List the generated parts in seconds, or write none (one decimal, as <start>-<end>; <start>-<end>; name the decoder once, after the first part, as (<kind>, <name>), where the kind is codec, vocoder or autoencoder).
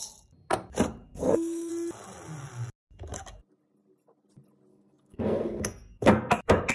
1.1-1.7 (codec, SNAC); 4.7-6.3